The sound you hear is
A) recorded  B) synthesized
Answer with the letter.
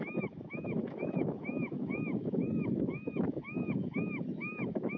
B